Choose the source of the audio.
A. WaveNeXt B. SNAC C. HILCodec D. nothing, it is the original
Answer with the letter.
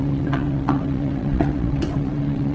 A